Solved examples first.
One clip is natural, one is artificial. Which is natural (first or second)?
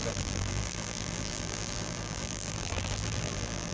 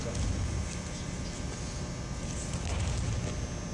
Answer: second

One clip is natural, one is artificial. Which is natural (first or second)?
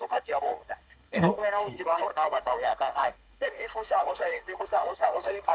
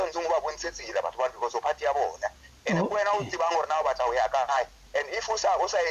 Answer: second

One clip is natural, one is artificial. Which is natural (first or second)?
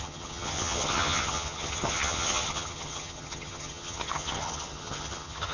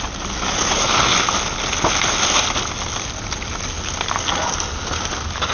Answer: second